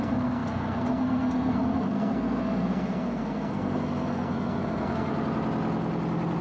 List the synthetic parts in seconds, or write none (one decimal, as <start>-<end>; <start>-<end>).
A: 0.0-5.1